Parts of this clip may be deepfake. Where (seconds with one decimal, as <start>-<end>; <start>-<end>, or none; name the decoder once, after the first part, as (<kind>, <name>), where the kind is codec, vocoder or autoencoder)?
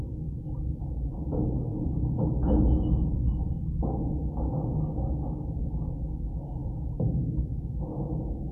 1.7-2.3 (vocoder, BigVGAN v2); 3.6-4.1; 6.6-7.8